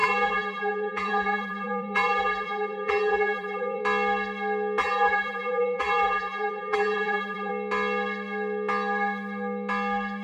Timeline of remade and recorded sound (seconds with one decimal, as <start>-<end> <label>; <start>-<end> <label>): 0.0-3.8 remade; 3.8-4.8 recorded; 4.8-7.5 remade; 7.5-10.2 recorded